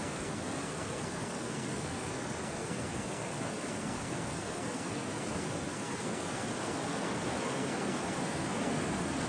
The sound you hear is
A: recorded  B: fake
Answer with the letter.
B